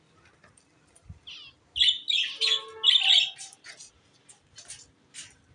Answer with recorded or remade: recorded